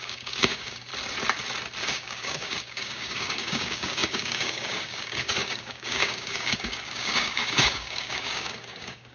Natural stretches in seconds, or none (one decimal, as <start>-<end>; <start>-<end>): 0.9-1.8

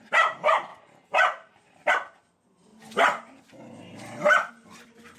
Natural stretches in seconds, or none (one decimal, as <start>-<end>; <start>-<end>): 0.0-0.7; 1.9-5.2

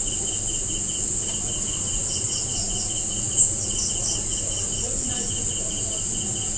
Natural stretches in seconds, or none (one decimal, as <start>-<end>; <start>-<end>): none

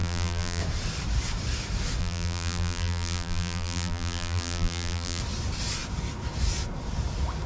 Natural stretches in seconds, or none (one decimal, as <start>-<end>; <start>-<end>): 0.6-2.0; 5.2-7.5